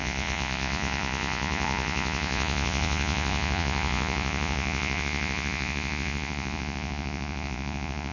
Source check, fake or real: fake